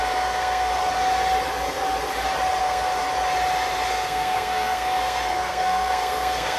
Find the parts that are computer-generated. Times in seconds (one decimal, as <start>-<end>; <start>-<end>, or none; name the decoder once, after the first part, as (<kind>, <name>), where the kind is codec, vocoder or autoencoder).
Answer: 0.0-0.7 (codec, SNAC); 2.6-3.0; 3.9-6.6